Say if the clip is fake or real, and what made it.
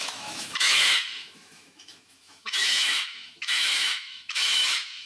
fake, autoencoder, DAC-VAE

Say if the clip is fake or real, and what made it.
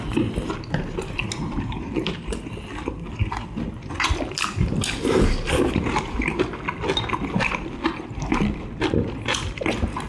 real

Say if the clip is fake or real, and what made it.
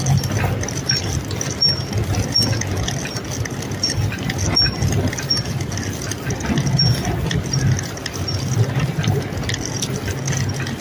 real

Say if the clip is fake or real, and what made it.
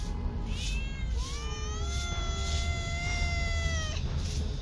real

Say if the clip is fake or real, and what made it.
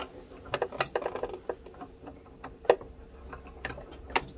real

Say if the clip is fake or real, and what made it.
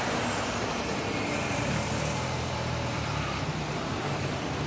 fake, vocoder, BigVGAN v2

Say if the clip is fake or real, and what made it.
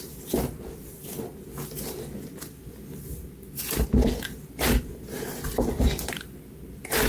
real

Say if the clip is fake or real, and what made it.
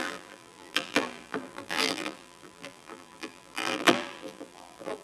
fake, vocoder, BigVGAN v2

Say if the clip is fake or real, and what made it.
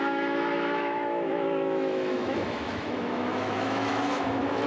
fake, autoencoder, DAC-VAE